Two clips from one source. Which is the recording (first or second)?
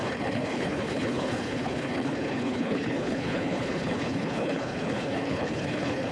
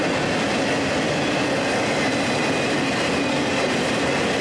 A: second